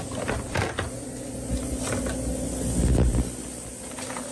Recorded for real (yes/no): yes